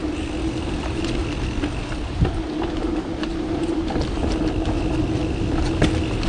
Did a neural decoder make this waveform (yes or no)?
no